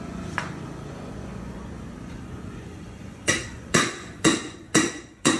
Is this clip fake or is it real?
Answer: fake